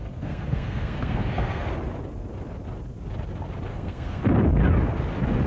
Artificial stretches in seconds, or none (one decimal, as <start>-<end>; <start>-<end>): 0.0-1.7; 3.7-4.2